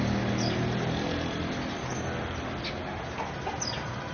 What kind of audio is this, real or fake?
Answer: real